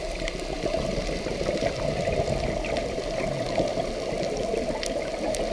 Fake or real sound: real